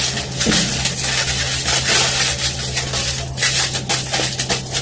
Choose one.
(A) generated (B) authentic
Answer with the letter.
B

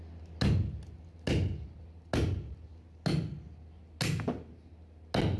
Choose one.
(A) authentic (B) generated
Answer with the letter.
A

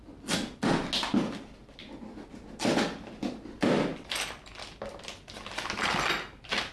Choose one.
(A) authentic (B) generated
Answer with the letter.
A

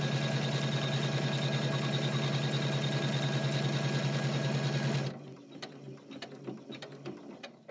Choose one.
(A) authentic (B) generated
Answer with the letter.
A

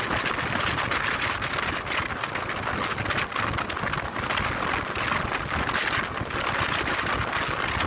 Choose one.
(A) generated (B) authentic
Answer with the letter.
B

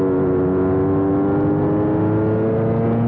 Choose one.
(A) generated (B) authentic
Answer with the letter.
B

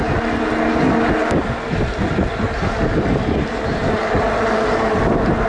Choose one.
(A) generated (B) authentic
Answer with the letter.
B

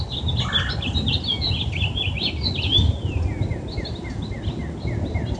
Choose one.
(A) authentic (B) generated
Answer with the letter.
A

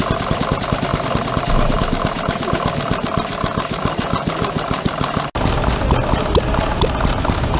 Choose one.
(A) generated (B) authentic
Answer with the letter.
B